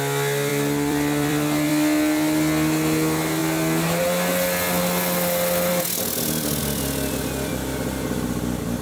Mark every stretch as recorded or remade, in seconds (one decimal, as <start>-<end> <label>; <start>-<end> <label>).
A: 0.0-0.5 recorded; 0.5-1.7 remade; 1.7-8.8 recorded